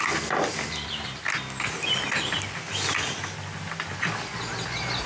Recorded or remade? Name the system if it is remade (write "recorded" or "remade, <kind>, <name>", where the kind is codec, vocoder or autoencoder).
recorded